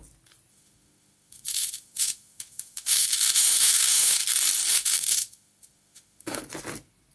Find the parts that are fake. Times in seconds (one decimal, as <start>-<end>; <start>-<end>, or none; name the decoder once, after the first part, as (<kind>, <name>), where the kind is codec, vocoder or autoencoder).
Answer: 0.5-4.2 (autoencoder, DAC-VAE); 4.7-6.4